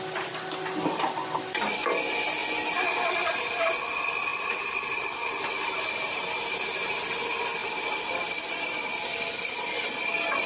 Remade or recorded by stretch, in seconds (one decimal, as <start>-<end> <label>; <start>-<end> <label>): 0.0-7.6 recorded; 7.6-8.8 remade; 8.8-10.5 recorded